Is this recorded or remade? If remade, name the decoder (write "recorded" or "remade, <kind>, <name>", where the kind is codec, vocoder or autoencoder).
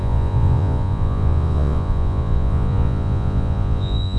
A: remade, vocoder, Vocos